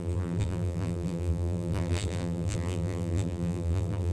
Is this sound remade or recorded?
remade